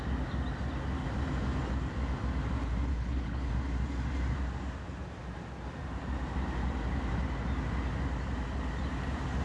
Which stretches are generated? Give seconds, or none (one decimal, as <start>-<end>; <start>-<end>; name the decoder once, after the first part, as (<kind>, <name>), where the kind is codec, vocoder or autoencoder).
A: 2.9-3.5 (codec, HILCodec)